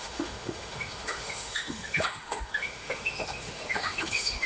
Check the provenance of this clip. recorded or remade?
remade